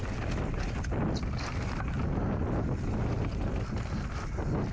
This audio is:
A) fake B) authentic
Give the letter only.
B